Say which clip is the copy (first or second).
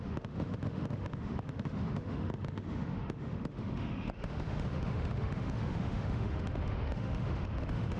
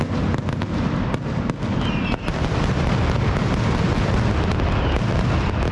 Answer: first